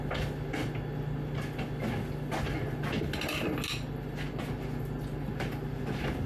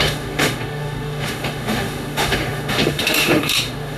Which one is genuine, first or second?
first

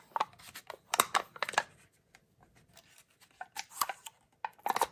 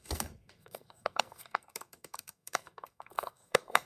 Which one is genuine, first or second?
first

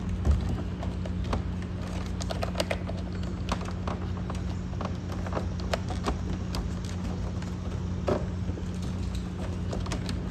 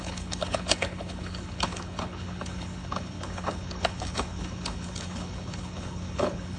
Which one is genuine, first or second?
first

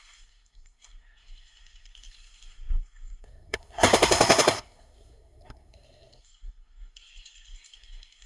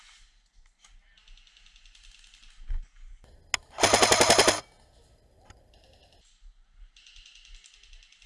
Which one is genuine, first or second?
second